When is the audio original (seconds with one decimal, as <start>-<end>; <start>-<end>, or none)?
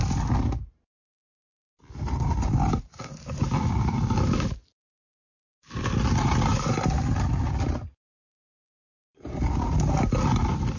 0.0-10.8